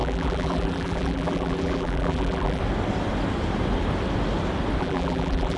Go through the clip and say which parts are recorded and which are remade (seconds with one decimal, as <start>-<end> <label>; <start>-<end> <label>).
0.0-2.6 remade; 2.6-4.8 recorded; 4.8-5.6 remade